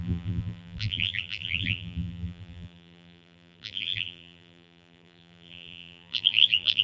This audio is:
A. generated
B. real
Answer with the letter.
A